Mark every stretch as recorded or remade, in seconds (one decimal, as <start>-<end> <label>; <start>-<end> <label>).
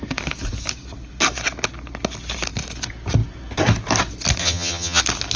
0.0-4.4 recorded; 4.4-5.0 remade; 5.0-5.4 recorded